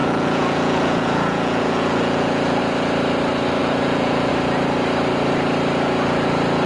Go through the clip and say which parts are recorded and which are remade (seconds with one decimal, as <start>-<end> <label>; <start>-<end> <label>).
0.0-2.6 remade; 2.6-3.6 recorded; 3.6-4.3 remade; 4.3-6.7 recorded